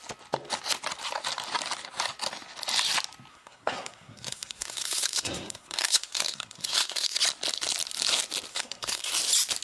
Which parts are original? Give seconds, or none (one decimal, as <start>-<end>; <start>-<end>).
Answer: 0.0-3.3; 7.2-8.5; 9.1-9.6